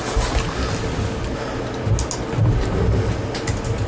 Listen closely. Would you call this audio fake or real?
real